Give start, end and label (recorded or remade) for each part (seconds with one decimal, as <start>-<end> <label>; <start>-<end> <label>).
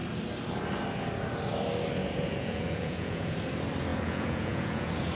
0.0-2.0 recorded; 2.0-3.4 remade; 3.4-3.9 recorded; 3.9-5.2 remade